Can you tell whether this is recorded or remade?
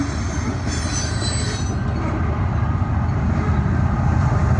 recorded